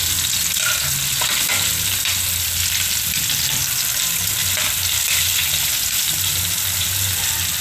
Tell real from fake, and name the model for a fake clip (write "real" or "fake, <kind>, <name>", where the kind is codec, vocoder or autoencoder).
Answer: real